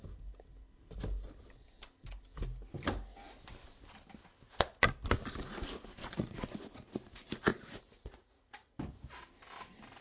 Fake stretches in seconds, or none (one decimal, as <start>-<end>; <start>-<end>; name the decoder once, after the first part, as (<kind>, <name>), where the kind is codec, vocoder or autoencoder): 5.9-6.6 (vocoder, Vocos); 7.5-8.8